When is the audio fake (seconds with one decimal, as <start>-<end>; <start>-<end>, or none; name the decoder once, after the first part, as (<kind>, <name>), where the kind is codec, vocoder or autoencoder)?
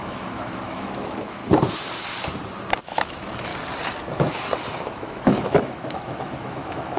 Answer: 0.0-1.4 (autoencoder, DAC-VAE); 2.8-3.5; 4.7-7.0